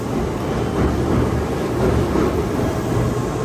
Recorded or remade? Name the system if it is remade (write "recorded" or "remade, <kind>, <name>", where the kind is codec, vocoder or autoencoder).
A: recorded